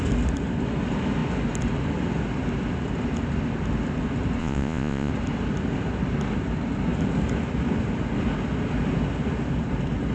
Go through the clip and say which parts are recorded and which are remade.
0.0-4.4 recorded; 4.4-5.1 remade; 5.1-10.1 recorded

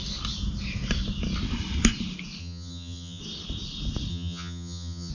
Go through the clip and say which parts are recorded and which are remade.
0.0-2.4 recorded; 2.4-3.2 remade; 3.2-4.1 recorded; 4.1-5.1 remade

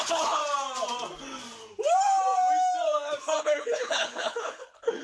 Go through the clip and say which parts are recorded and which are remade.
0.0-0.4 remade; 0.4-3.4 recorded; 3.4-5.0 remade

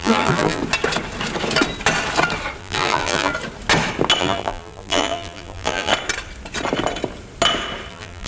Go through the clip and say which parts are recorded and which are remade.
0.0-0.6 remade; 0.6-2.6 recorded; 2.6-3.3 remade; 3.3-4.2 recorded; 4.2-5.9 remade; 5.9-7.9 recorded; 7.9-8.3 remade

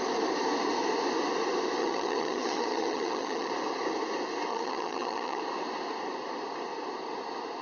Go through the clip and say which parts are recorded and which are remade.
0.0-1.8 recorded; 1.8-3.5 remade; 3.5-4.5 recorded; 4.5-5.4 remade; 5.4-7.6 recorded